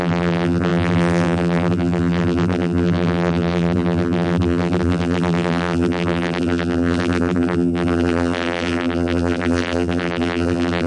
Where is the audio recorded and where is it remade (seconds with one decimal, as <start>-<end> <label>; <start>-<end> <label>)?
0.0-10.9 remade